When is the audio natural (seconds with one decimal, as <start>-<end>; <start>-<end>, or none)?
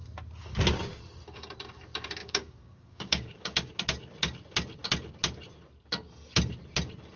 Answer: 0.0-2.2; 3.7-7.2